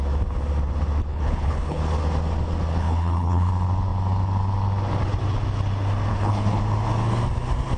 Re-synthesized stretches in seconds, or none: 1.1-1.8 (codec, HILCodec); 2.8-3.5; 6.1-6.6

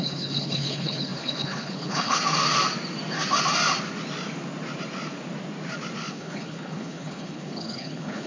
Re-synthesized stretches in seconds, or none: 0.0-2.2 (codec, HILCodec); 6.1-8.3

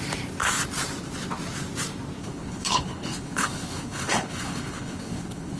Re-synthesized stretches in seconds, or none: 2.2-5.6 (codec, HILCodec)

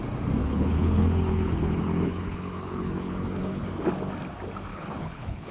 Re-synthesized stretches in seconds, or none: 0.4-3.7 (codec, HILCodec); 4.7-5.5

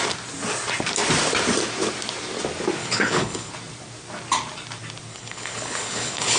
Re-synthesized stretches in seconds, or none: 2.8-3.5 (codec, HILCodec); 5.1-6.4

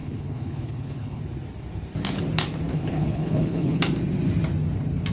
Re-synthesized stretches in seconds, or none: 0.0-1.2 (codec, HILCodec); 2.7-3.8